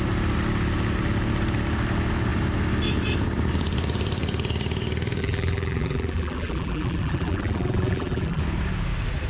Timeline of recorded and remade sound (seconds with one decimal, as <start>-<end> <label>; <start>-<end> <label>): 0.0-5.2 recorded; 5.2-8.4 remade; 8.4-9.3 recorded